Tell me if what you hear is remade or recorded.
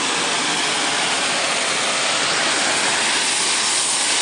recorded